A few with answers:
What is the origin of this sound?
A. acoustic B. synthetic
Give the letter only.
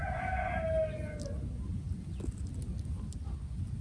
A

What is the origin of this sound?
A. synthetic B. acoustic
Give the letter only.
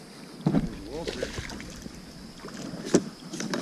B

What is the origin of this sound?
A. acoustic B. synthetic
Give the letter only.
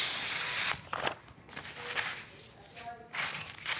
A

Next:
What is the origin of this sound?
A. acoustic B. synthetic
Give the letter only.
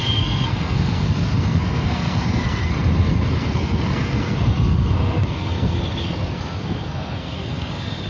B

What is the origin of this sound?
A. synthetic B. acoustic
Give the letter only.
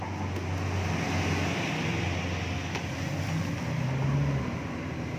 B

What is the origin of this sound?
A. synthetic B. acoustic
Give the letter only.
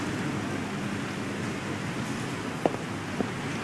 B